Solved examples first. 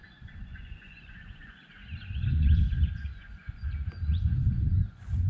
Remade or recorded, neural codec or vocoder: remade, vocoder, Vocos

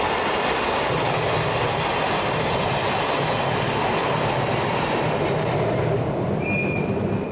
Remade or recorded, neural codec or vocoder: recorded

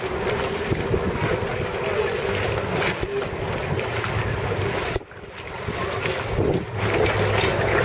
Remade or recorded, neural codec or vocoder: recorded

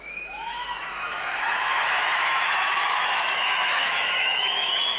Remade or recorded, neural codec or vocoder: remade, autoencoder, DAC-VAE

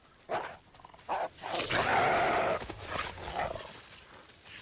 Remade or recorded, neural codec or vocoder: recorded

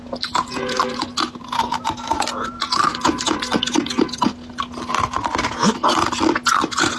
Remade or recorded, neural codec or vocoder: recorded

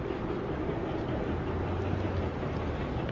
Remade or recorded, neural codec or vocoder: recorded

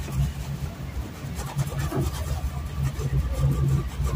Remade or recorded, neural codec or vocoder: recorded